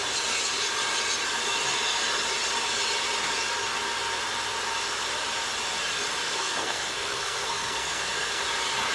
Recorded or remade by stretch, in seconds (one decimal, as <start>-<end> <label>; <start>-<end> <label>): 0.0-6.2 recorded; 6.2-8.4 remade; 8.4-8.9 recorded